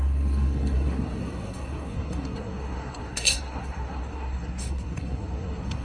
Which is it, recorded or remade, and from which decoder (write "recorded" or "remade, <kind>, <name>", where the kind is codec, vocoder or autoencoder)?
remade, codec, SNAC